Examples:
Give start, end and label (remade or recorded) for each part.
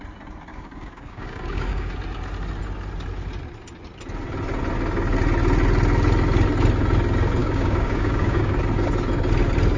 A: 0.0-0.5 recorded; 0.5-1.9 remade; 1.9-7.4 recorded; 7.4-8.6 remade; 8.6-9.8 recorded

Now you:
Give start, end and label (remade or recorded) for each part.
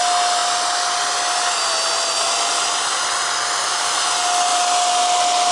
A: 0.0-5.5 recorded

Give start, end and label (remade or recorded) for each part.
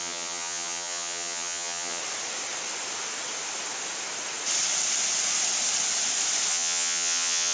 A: 0.0-2.0 remade; 2.0-6.5 recorded; 6.5-7.5 remade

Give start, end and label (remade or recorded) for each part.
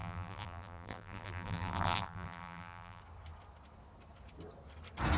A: 0.0-3.0 remade; 3.0-5.2 recorded